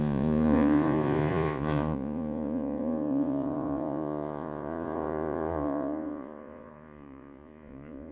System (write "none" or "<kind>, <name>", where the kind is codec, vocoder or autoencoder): vocoder, Vocos